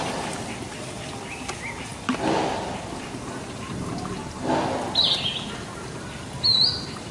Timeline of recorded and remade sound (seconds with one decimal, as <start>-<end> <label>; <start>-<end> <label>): 0.0-7.1 recorded